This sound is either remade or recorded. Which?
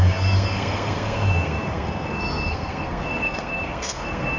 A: remade